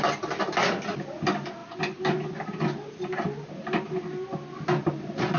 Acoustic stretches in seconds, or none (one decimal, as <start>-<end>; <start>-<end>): 0.0-5.4